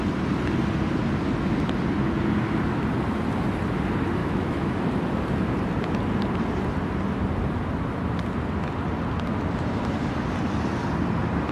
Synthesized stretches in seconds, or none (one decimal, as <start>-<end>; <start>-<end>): 4.2-4.8